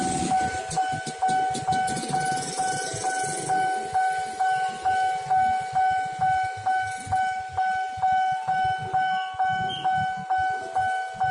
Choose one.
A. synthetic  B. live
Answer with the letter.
B